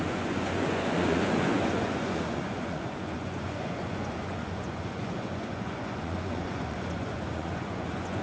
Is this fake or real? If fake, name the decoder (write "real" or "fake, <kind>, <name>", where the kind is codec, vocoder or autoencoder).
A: fake, vocoder, Vocos